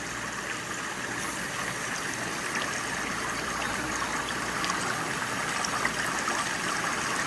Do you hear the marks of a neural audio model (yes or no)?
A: no